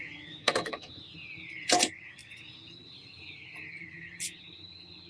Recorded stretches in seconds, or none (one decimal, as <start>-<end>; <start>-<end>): 0.0-0.4; 0.9-5.1